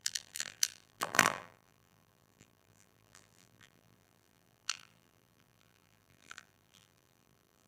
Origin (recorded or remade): remade